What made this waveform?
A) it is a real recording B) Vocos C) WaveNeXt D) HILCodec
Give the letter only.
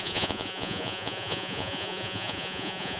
B